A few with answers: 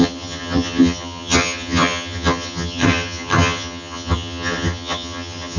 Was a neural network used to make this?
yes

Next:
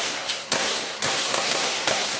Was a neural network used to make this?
yes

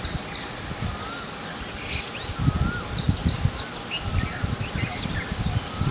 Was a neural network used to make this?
no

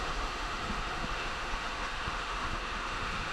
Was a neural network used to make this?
yes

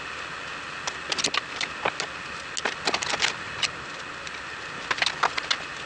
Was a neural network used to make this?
no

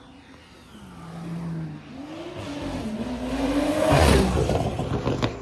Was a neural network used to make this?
no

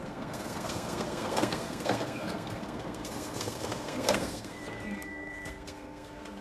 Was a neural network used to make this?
yes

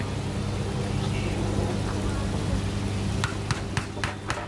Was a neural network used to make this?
no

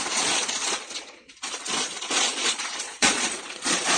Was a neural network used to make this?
yes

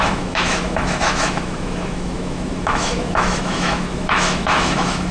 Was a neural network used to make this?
yes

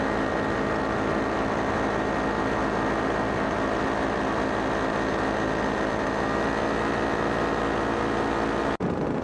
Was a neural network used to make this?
no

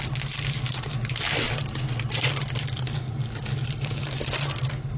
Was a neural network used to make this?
no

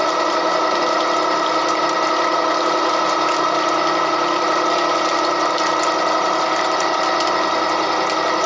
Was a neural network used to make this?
no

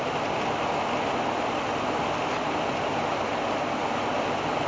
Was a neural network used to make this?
no